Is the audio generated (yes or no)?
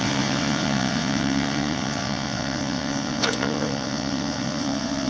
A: yes